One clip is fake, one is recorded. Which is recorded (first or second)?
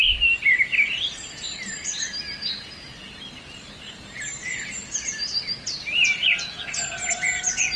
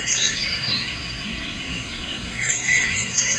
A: first